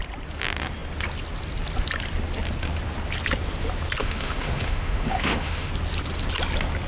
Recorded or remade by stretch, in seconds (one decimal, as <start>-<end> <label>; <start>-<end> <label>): 0.0-4.0 recorded; 4.0-5.7 remade; 5.7-6.9 recorded